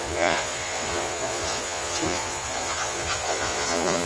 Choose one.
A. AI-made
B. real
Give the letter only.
A